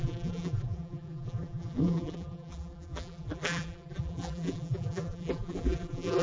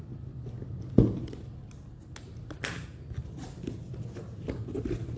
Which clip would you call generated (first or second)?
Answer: first